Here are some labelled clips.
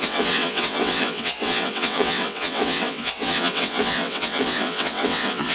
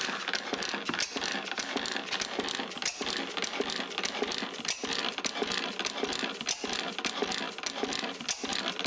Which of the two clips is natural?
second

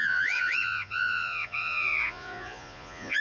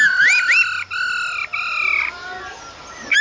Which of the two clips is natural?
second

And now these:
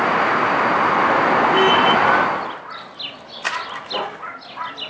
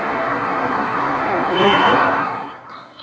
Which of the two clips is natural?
first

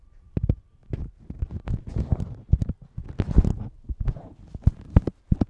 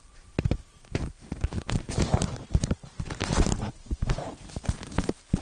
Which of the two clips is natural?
first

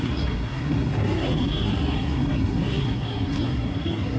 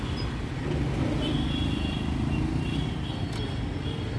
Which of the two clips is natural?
second